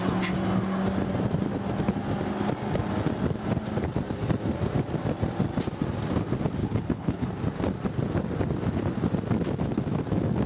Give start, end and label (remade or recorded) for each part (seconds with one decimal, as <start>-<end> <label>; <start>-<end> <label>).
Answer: 0.0-6.6 recorded; 6.6-7.3 remade; 7.3-10.5 recorded